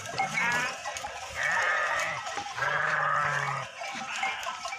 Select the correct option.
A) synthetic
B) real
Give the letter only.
A